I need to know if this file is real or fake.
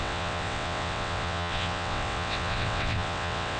fake